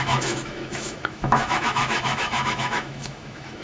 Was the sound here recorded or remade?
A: remade